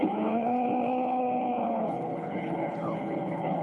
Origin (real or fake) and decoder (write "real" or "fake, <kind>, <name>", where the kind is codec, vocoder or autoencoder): fake, codec, HILCodec